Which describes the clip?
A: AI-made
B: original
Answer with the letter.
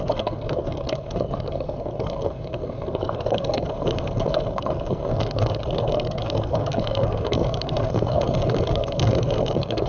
A